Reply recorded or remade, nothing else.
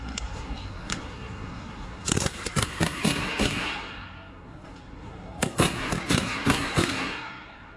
remade